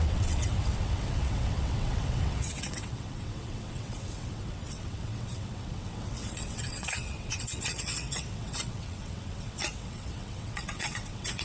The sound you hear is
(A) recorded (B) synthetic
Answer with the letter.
B